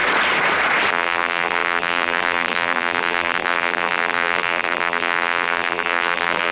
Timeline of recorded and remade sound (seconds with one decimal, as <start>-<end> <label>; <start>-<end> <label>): 0.0-0.9 recorded; 0.9-6.5 remade